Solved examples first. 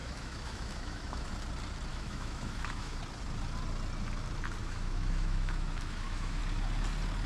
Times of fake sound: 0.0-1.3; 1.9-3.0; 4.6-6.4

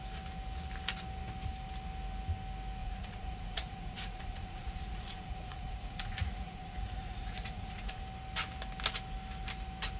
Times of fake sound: 2.8-8.0

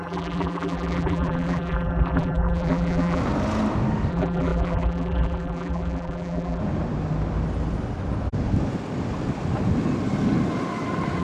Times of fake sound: 0.0-3.2; 4.1-6.6

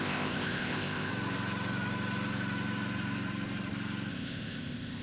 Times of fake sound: 0.0-1.1; 4.1-5.0

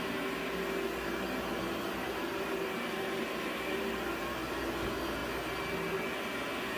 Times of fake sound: 1.5-4.2

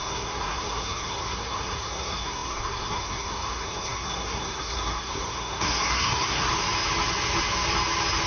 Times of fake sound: 0.0-6.5